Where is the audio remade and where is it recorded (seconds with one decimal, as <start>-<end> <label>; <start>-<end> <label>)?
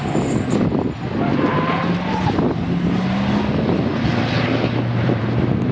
0.0-5.7 recorded